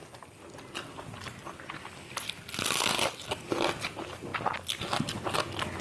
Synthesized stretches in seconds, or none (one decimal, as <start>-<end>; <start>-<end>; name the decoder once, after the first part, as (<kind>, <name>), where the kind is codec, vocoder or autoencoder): none